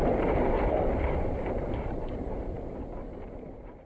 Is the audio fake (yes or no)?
yes